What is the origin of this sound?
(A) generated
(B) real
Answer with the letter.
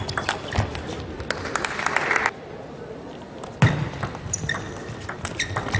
A